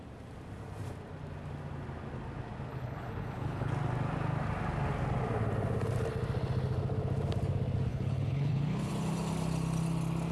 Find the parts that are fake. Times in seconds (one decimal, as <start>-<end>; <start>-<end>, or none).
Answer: 2.7-3.7; 7.9-8.9